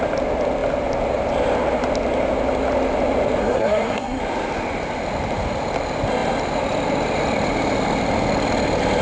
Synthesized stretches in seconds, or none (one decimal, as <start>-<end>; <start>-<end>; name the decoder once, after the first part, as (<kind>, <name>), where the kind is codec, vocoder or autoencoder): 3.4-4.2 (codec, SNAC)